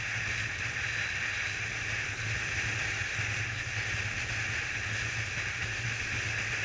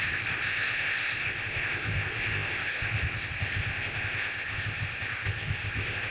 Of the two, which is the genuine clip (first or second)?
first